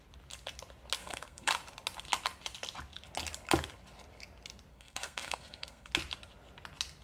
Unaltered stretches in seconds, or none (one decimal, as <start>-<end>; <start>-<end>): 0.0-1.0; 1.5-4.7; 5.9-7.0